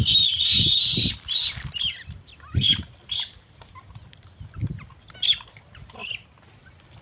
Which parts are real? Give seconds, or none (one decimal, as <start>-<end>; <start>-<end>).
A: 6.0-6.6

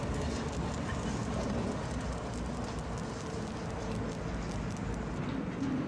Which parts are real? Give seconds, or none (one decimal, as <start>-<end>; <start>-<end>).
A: 0.0-5.9

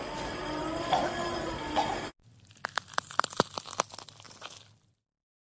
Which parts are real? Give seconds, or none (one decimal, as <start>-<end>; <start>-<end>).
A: 0.0-5.5